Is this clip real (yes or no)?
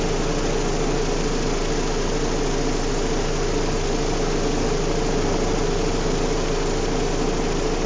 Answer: yes